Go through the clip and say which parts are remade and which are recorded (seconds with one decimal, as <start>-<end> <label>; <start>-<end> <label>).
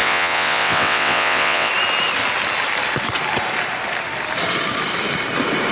0.0-1.7 remade; 1.7-5.7 recorded